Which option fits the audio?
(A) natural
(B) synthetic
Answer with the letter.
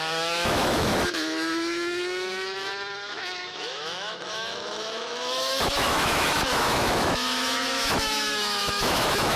B